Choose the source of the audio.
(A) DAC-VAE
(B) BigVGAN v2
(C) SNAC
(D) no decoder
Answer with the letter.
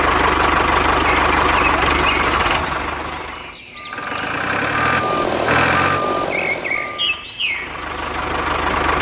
D